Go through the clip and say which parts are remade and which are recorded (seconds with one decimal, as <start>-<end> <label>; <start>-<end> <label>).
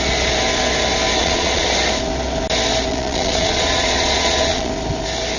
0.0-1.2 recorded; 1.2-1.7 remade; 1.7-2.9 recorded; 2.9-4.7 remade; 4.7-5.4 recorded